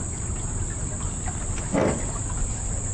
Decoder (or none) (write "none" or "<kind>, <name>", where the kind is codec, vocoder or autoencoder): none